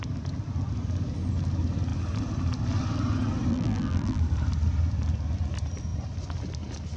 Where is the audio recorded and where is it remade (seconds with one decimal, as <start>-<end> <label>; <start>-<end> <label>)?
0.0-3.5 recorded; 3.5-4.2 remade; 4.2-7.0 recorded